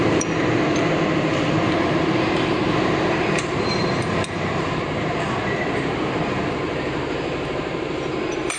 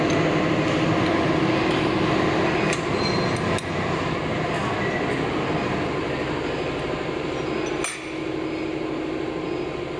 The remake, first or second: first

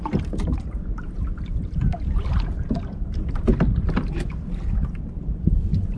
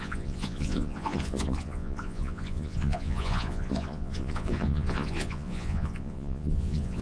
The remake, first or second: second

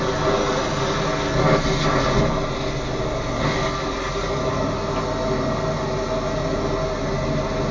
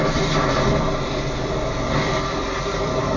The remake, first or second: second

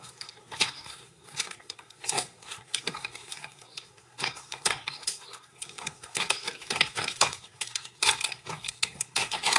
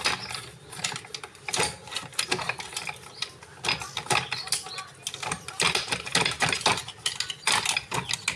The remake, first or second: first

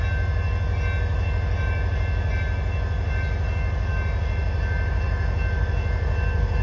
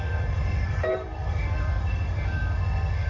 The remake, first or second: second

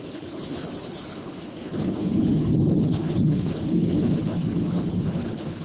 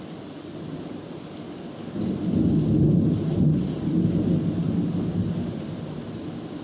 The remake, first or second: first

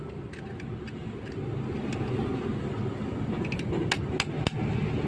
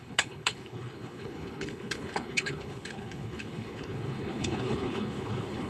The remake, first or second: second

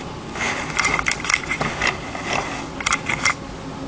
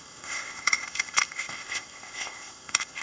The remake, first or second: second